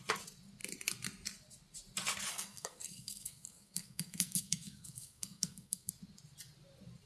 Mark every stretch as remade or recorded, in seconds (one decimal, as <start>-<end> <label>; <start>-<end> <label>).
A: 0.0-2.3 recorded; 2.3-5.9 remade; 5.9-7.1 recorded